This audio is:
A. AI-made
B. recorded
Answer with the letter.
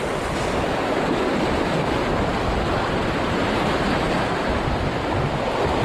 B